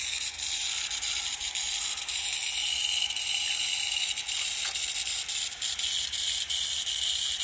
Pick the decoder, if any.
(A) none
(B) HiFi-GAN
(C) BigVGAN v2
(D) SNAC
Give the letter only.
A